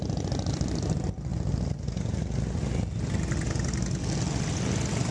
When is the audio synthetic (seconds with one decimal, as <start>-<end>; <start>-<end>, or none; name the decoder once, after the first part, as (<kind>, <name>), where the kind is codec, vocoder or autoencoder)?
none